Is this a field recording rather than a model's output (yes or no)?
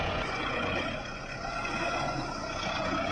no